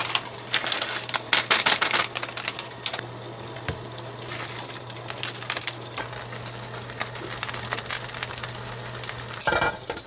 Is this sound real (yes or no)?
yes